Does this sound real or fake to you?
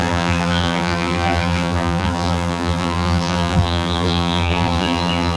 fake